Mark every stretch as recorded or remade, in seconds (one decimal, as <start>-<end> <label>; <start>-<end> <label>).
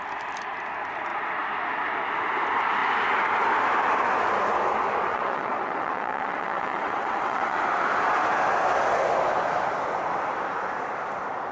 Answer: 0.0-5.1 recorded; 5.1-7.6 remade; 7.6-11.5 recorded